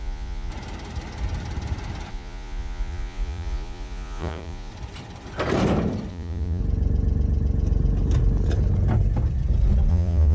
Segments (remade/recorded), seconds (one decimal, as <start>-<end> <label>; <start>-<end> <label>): 0.0-0.5 remade; 0.5-2.1 recorded; 2.1-4.7 remade; 4.7-6.1 recorded; 6.1-6.6 remade; 6.6-9.9 recorded; 9.9-10.3 remade